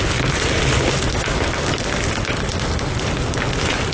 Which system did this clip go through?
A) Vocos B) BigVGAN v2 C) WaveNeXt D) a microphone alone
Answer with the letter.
D